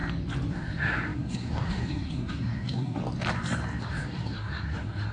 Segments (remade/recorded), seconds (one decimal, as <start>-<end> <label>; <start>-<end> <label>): 0.0-0.5 recorded; 0.5-3.0 remade; 3.0-3.8 recorded; 3.8-5.1 remade